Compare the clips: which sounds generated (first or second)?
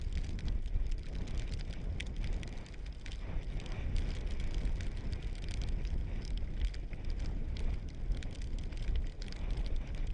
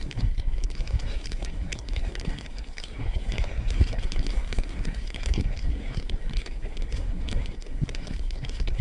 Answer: second